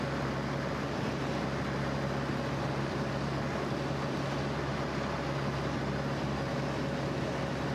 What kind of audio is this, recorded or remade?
recorded